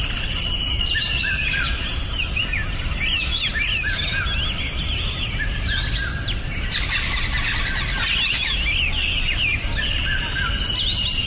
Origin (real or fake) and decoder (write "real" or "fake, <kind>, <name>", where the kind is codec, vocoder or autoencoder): real